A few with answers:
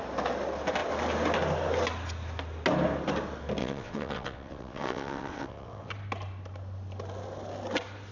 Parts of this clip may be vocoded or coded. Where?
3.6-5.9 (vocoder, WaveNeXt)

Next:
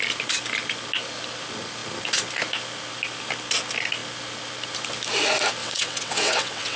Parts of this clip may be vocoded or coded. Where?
5.6-6.8 (vocoder, WaveNeXt)

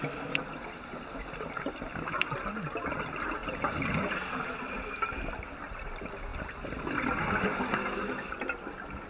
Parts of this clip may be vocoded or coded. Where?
none

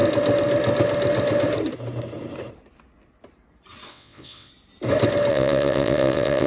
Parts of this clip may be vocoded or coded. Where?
3.9-4.5 (vocoder, WaveNeXt); 5.3-6.5

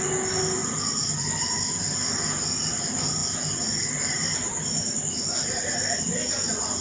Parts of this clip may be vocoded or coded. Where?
none

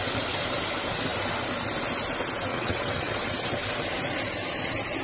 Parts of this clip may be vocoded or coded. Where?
2.5-3.3 (vocoder, WaveNeXt)

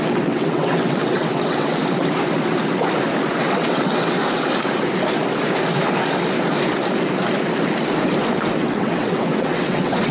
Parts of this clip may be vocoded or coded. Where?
0.0-1.8 (vocoder, WaveNeXt); 3.4-4.2; 8.3-10.1